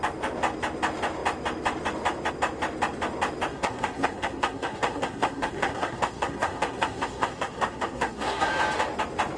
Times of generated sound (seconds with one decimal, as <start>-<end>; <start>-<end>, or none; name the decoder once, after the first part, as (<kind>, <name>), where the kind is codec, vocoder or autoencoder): 3.5-8.5 (codec, SNAC)